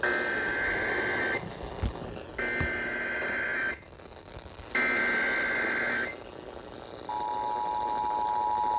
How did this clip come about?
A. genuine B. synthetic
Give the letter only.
A